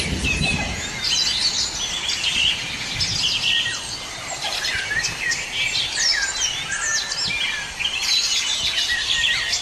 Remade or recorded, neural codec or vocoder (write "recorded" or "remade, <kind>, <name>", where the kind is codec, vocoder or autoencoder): recorded